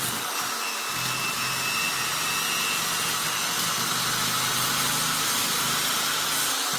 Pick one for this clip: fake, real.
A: real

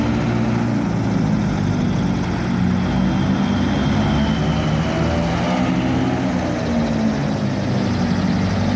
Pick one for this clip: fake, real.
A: real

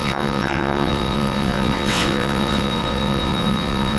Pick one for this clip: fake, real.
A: fake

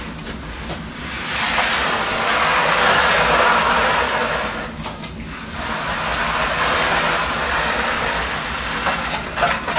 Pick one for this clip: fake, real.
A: real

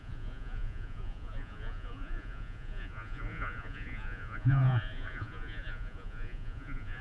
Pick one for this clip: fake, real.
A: fake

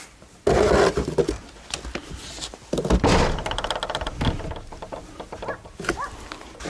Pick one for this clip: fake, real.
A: real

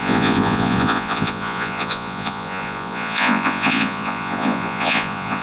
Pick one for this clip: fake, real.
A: fake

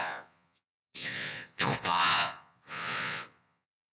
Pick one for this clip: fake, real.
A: fake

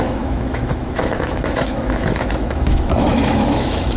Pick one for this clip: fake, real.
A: fake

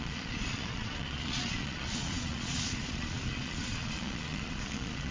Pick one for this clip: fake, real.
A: fake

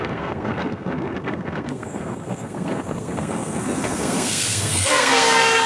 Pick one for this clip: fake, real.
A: fake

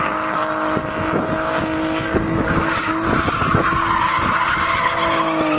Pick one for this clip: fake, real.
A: real